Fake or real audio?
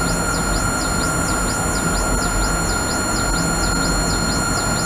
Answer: real